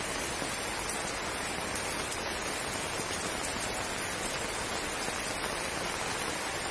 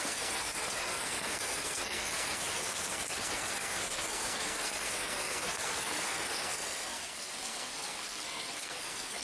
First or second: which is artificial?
second